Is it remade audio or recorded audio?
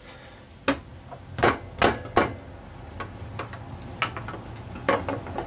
recorded